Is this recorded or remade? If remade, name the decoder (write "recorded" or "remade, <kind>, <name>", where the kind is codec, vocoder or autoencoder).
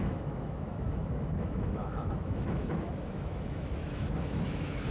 remade, autoencoder, DAC-VAE